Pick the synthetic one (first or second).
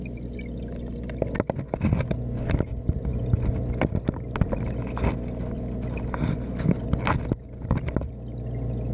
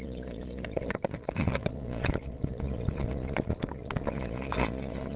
second